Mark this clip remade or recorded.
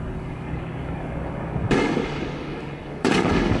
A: remade